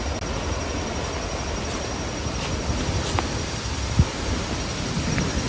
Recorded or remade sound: recorded